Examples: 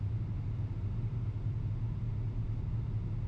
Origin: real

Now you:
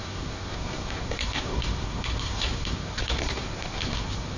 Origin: fake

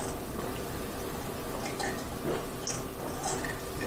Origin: real